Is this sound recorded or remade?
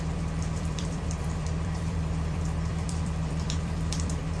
remade